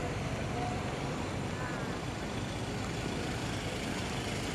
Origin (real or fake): real